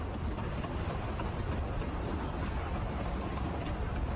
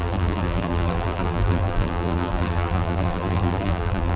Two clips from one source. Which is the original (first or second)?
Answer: first